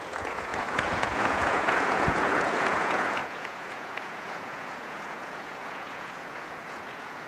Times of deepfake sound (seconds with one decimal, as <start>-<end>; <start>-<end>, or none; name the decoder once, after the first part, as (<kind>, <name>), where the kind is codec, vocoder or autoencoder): 0.0-7.3 (vocoder, Vocos)